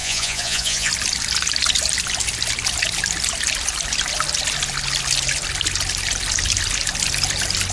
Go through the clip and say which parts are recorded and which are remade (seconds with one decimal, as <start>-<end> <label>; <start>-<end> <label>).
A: 0.0-0.9 remade; 0.9-7.7 recorded